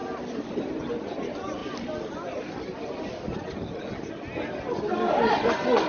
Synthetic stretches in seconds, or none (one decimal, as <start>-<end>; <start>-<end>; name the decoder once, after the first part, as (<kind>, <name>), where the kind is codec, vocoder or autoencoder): 0.9-1.6 (vocoder, BigVGAN v2); 5.1-5.9